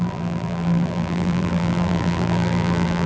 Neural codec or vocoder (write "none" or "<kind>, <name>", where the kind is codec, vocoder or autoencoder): vocoder, BigVGAN v2